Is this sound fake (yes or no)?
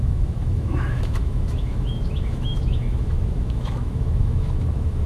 yes